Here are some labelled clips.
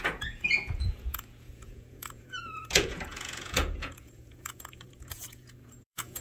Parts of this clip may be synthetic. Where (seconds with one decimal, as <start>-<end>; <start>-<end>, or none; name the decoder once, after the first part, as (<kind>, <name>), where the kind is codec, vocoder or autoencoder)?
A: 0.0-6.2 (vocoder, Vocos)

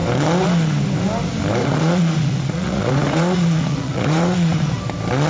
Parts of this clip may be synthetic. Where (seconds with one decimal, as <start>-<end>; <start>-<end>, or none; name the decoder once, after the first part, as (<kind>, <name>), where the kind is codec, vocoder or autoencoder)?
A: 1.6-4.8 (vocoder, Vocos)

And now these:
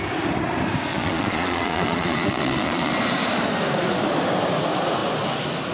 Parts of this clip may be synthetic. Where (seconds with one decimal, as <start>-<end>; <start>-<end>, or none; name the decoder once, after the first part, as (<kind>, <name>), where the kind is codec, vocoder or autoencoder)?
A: 0.9-2.9 (vocoder, Vocos)

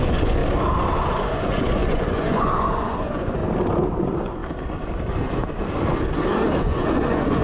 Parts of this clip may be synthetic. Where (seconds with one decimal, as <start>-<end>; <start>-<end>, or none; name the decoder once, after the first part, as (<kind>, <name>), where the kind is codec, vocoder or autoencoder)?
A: 0.0-0.4 (vocoder, Vocos); 1.0-3.4; 4.0-4.4; 6.6-7.4